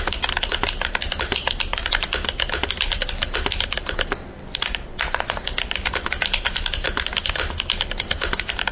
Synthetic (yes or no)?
no